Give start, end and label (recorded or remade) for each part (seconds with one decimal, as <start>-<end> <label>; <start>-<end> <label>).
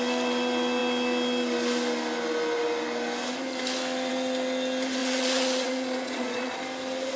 0.0-5.0 recorded; 5.0-6.5 remade; 6.5-7.2 recorded